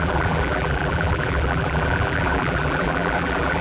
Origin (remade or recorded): remade